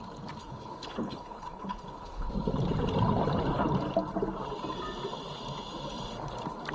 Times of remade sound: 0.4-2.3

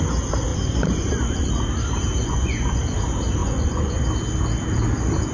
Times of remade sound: 0.5-1.5; 2.2-2.8; 3.4-4.0